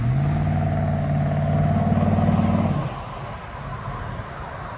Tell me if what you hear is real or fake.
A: real